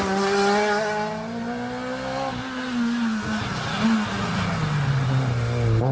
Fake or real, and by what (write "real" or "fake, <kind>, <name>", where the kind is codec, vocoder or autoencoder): real